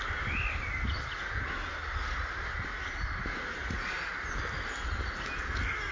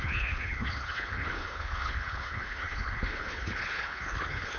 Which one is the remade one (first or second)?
second